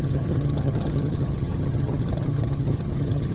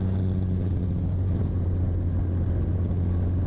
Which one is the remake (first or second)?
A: first